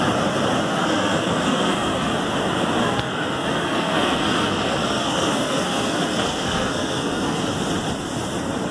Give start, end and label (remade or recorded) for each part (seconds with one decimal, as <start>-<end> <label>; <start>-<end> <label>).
0.0-0.7 recorded; 0.7-2.1 remade; 2.1-2.8 recorded; 2.8-7.4 remade; 7.4-8.7 recorded

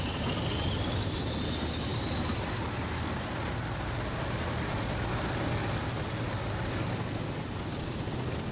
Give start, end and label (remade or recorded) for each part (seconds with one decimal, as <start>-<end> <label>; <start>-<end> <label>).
0.0-8.5 recorded

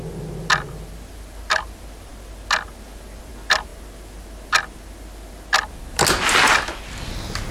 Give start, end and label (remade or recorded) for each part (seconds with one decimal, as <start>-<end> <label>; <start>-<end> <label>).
0.0-7.5 recorded

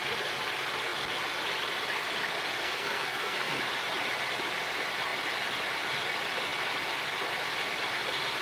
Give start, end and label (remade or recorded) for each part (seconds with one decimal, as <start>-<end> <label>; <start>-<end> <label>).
0.0-2.6 recorded; 2.6-3.6 remade; 3.6-8.4 recorded

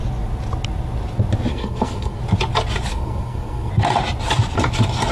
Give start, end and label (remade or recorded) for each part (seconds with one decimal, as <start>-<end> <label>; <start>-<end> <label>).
0.0-1.5 recorded; 1.5-2.2 remade; 2.2-2.9 recorded; 2.9-3.7 remade; 3.7-5.1 recorded

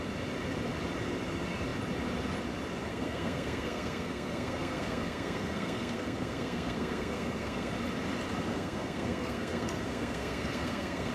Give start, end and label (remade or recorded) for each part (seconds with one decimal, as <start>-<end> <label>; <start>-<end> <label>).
0.0-2.9 recorded; 2.9-7.7 remade; 7.7-8.5 recorded; 8.5-11.1 remade

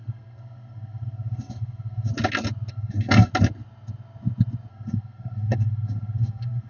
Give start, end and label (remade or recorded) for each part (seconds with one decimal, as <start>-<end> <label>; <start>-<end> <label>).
0.0-2.1 remade; 2.1-2.7 recorded; 2.7-3.3 remade; 3.3-4.7 recorded; 4.7-6.7 remade